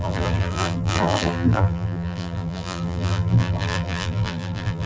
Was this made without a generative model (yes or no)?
no